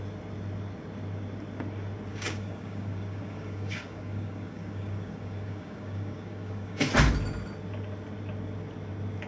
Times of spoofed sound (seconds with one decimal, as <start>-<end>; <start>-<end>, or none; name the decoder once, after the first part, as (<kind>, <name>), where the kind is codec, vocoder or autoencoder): 2.1-6.9 (codec, DAC)